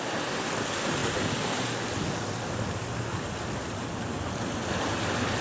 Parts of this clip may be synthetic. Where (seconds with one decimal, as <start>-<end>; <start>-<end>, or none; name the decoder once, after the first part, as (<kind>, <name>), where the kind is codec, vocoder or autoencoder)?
none